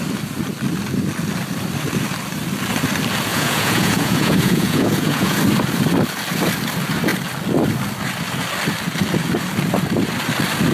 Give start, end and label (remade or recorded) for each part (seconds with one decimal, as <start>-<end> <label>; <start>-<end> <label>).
0.0-3.3 recorded; 3.3-5.4 remade; 5.4-10.7 recorded